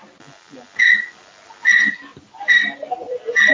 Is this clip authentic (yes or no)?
yes